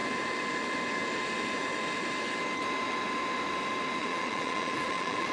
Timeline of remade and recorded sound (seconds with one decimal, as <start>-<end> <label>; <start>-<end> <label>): 0.0-4.0 recorded; 4.0-5.3 remade